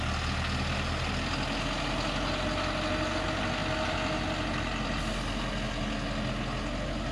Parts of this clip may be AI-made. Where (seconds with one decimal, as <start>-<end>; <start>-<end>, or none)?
none

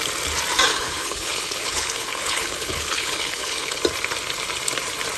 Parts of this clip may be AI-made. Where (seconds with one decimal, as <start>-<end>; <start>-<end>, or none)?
0.7-3.8